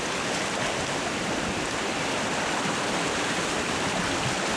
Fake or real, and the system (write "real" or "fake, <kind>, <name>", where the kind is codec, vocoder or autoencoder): real